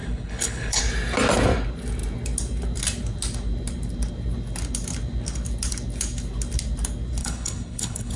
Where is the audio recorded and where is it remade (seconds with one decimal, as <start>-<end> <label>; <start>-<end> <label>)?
0.0-0.8 remade; 0.8-7.2 recorded; 7.2-8.2 remade